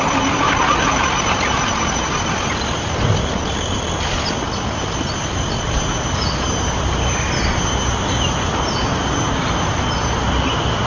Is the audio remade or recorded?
recorded